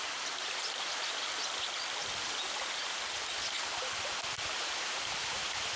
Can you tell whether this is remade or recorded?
recorded